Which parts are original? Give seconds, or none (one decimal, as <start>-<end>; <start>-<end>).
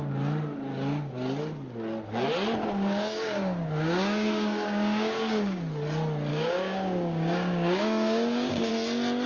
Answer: 0.0-2.6; 5.6-6.3; 8.7-9.3